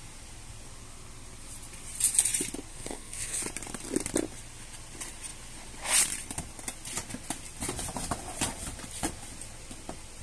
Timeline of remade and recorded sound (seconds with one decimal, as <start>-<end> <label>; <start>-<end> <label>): 0.0-2.7 recorded; 2.7-3.4 remade; 3.4-10.2 recorded